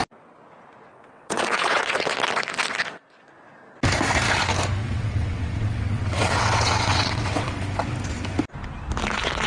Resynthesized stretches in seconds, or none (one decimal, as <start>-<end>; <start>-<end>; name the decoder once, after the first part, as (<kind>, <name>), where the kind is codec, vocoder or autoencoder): 0.9-2.1 (vocoder, WaveNeXt); 4.8-7.5